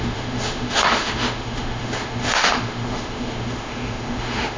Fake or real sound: fake